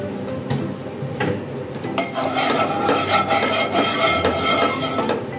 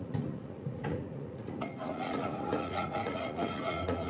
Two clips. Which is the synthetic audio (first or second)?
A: second